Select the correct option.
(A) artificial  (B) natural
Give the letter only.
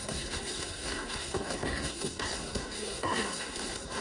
A